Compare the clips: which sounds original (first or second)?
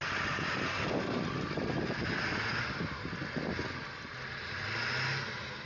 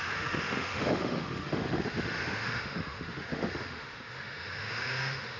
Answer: first